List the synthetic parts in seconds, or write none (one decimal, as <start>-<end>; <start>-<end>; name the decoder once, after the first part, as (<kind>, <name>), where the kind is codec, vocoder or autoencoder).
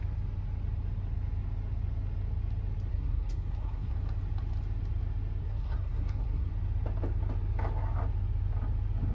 2.9-3.9 (codec, SNAC); 5.4-6.5